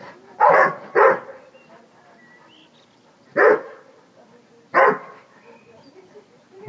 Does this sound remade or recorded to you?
recorded